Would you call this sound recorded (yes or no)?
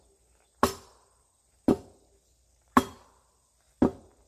yes